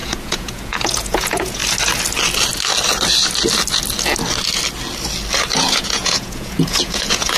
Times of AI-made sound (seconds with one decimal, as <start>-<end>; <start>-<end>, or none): 0.0-1.6; 5.6-7.4